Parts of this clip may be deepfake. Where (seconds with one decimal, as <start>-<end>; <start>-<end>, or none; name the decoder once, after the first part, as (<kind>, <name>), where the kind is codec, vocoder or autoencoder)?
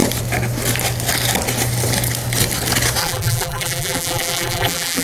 3.0-5.0 (vocoder, BigVGAN v2)